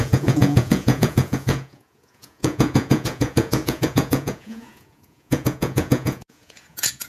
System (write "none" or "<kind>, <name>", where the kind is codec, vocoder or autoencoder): vocoder, Vocos